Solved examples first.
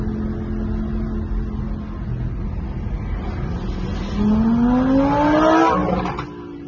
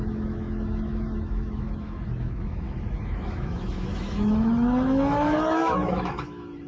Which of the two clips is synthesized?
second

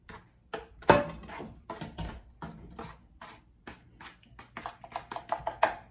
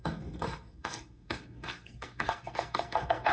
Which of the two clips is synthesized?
second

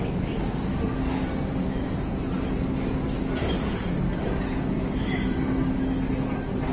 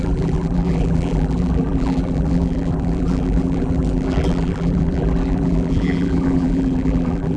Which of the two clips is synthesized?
second